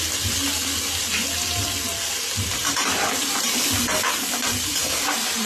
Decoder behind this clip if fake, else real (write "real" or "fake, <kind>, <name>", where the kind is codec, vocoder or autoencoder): real